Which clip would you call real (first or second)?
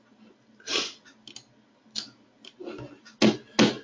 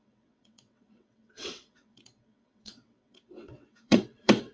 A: first